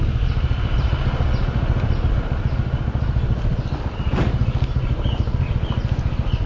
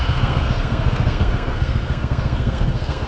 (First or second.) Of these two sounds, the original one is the first